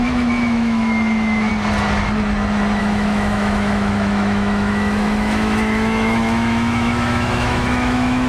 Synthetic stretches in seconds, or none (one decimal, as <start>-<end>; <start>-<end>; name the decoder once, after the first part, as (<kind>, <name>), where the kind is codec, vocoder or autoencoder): 0.0-1.5 (autoencoder, DAC-VAE); 2.8-8.3